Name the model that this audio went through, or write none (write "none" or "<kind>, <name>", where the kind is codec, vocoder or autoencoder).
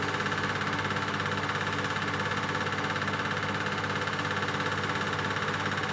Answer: none